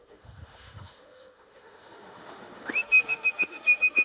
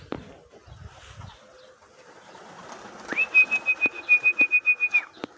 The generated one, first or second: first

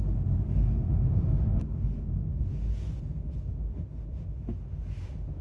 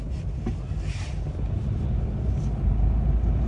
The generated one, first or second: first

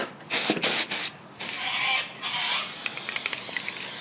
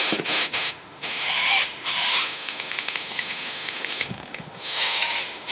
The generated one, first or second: second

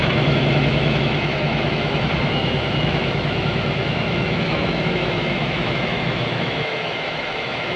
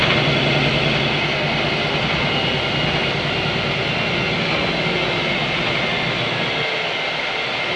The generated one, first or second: first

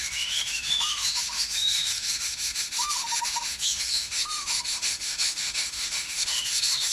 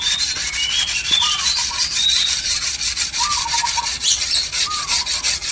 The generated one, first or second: first